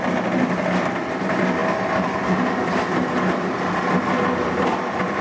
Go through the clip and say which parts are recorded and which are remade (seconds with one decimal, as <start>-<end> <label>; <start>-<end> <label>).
0.0-5.2 recorded